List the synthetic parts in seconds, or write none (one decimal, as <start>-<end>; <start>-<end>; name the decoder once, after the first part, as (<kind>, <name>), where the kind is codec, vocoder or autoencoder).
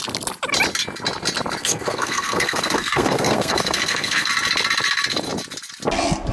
1.6-4.3 (codec, SNAC)